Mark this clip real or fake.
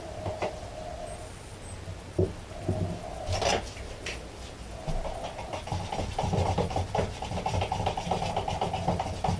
real